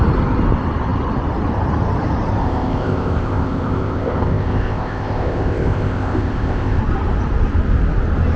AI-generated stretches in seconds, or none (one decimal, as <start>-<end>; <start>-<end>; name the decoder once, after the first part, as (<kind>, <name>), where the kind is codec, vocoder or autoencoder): 2.4-6.8 (codec, ZipCodec)